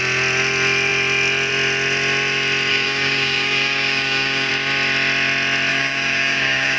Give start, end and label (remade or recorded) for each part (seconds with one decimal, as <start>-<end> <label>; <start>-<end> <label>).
0.0-2.7 recorded; 2.7-4.5 remade; 4.5-5.7 recorded; 5.7-6.8 remade